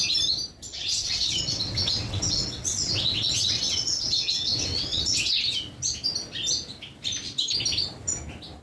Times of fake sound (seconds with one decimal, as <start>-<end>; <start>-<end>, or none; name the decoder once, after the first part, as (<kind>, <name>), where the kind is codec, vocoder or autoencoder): 0.7-5.4 (vocoder, WaveNeXt)